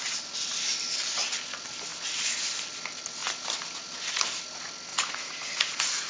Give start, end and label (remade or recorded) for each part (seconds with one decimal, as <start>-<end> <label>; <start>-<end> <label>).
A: 0.0-4.9 recorded; 4.9-6.1 remade